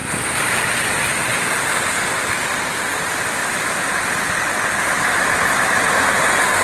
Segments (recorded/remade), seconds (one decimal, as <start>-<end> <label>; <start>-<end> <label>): 0.0-3.4 recorded; 3.4-4.2 remade; 4.2-6.6 recorded